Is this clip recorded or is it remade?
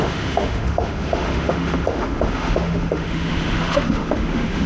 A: remade